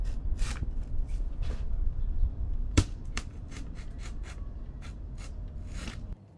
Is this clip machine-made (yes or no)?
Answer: yes